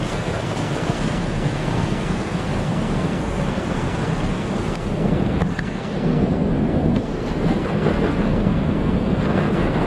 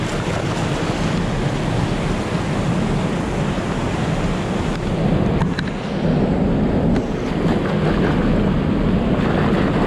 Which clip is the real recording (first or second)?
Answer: second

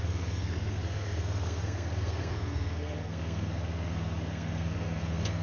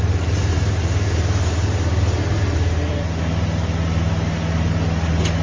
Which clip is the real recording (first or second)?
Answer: second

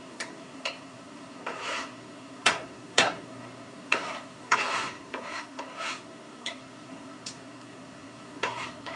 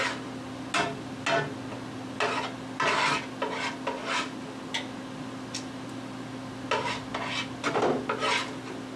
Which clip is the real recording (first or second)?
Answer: second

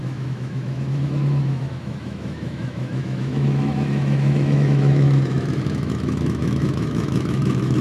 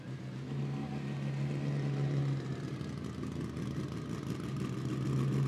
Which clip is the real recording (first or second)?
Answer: second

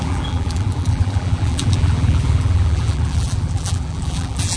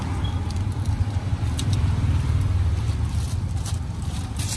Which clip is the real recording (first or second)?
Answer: second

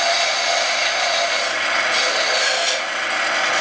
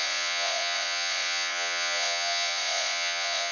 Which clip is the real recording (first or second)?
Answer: first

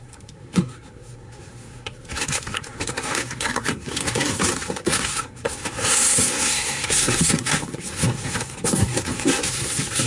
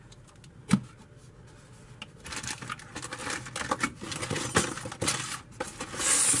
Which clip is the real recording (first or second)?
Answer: second